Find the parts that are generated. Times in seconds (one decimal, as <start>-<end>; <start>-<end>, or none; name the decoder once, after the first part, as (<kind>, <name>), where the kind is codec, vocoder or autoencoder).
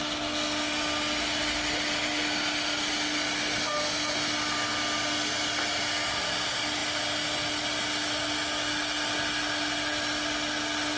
none